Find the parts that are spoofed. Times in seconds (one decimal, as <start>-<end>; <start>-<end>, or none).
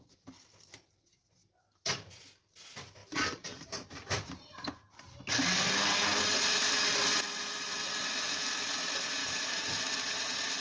3.0-3.9; 9.2-9.8